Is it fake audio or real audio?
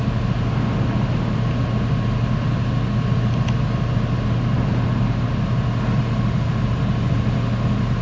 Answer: real